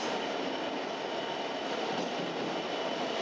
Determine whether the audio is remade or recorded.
recorded